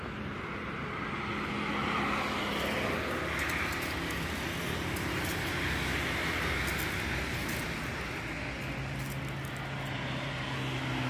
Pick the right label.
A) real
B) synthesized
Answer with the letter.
A